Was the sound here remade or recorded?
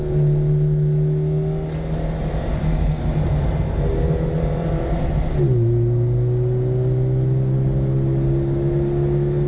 recorded